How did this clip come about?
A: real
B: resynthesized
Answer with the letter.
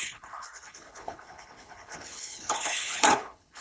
B